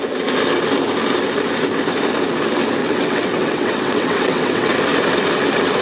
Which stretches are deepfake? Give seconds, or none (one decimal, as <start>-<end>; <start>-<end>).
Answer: 2.8-4.7

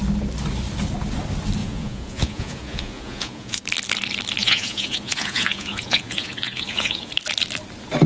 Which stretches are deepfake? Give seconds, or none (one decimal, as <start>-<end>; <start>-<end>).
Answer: 1.6-3.6; 4.4-7.1

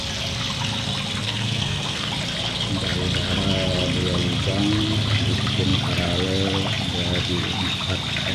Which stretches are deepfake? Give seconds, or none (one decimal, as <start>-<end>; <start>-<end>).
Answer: 1.2-2.1

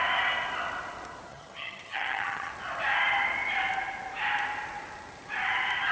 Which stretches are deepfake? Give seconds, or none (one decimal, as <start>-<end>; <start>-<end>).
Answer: 1.3-2.5

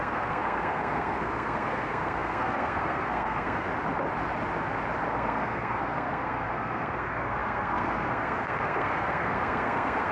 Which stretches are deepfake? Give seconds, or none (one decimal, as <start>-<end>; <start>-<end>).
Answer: 0.0-3.7; 5.1-10.1

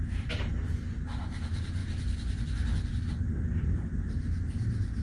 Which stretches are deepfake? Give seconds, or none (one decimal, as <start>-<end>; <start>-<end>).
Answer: 0.0-1.8; 3.1-5.0

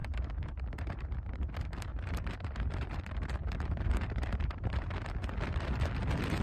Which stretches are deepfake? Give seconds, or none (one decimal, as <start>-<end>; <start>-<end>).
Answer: 0.0-1.4; 1.9-3.0; 3.4-5.3